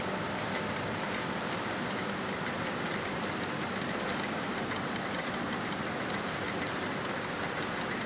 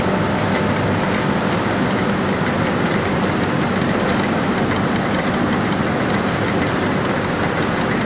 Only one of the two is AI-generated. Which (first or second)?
first